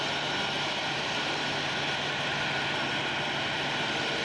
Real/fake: real